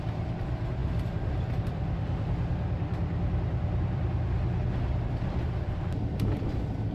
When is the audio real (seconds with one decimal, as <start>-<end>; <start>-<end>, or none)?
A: none

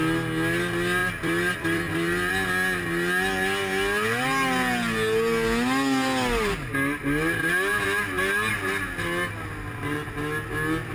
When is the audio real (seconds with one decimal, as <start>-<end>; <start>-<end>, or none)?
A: 0.0-1.0; 2.3-10.9

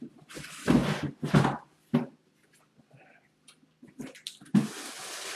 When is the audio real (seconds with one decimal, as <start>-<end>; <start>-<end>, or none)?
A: 0.0-5.4

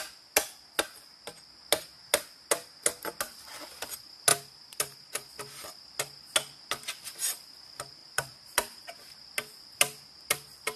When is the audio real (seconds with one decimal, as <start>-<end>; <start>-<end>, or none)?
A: 0.0-4.3; 5.3-8.0; 9.0-10.8

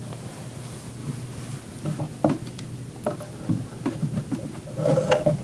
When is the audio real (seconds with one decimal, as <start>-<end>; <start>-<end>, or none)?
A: 0.0-1.0; 2.0-5.4

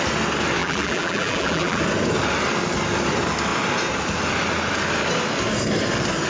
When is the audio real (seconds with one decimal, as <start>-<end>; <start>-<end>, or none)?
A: 0.0-0.6; 1.8-6.3

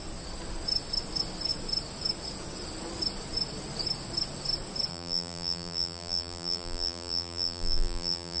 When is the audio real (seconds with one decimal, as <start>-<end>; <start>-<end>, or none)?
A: 0.0-4.9

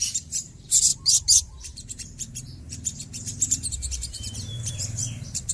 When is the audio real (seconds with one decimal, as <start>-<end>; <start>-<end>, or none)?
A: none